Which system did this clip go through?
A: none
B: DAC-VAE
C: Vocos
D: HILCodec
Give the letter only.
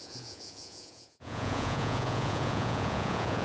C